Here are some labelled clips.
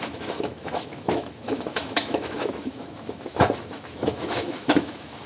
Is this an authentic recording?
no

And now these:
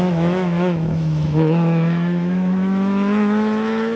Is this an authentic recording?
no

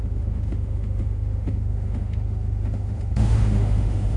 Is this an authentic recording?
no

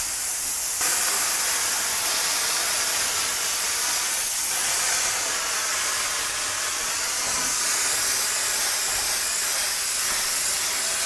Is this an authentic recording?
yes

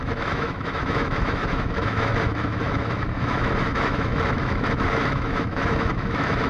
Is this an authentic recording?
no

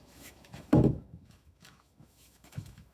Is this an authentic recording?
no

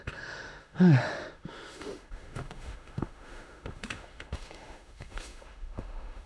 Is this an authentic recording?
no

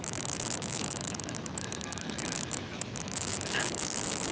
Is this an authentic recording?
no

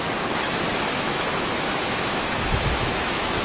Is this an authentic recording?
no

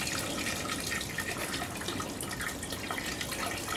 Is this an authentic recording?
yes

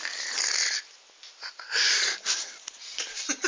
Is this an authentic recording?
yes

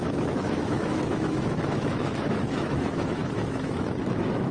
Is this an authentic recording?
no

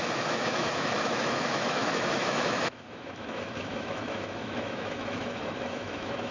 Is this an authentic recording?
no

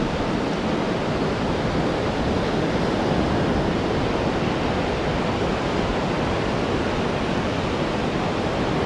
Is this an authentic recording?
yes